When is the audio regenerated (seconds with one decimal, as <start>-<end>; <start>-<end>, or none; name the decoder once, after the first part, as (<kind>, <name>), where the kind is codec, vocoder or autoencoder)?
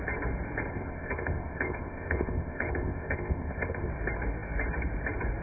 0.7-3.9 (codec, ZipCodec)